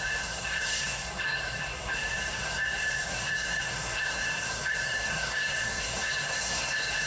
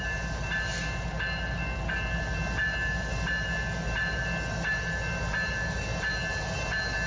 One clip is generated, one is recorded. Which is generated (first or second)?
first